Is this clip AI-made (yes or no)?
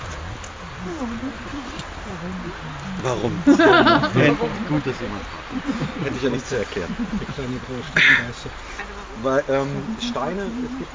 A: no